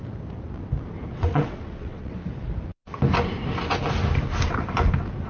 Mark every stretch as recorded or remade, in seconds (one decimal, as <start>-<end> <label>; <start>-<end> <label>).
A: 0.0-1.1 recorded; 1.1-2.1 remade; 2.1-5.3 recorded